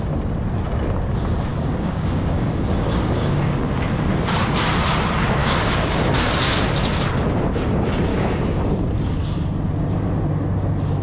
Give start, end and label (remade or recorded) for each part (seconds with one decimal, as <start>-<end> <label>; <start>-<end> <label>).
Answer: 0.0-1.5 recorded; 1.5-3.6 remade; 3.6-5.4 recorded; 5.4-6.0 remade; 6.0-8.1 recorded; 8.1-8.6 remade; 8.6-11.0 recorded